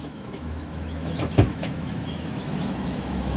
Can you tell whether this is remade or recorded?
remade